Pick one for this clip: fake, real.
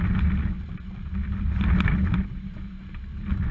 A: real